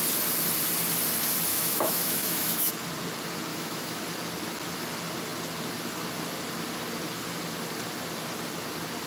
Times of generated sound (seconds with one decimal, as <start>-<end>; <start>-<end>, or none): 1.5-2.7; 3.5-4.0